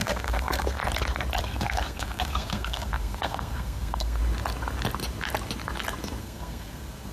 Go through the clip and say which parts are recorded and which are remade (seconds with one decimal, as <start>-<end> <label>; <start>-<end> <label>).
0.0-0.8 remade; 0.8-1.4 recorded; 1.4-4.2 remade; 4.2-6.2 recorded; 6.2-7.1 remade